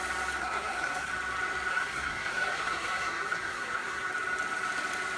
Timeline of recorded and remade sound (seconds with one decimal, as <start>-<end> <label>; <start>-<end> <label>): 0.0-0.4 recorded; 0.4-1.1 remade; 1.1-1.7 recorded; 1.7-4.1 remade; 4.1-5.2 recorded

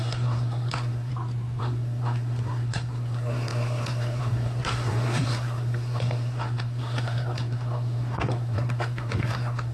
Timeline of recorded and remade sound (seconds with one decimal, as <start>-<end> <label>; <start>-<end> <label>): 0.0-1.1 remade; 1.1-1.6 recorded; 1.6-9.7 remade

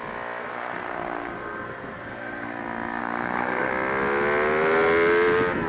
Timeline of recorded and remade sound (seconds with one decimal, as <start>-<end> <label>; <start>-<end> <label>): 0.0-0.4 recorded; 0.4-2.5 remade; 2.5-3.0 recorded; 3.0-3.7 remade; 3.7-5.7 recorded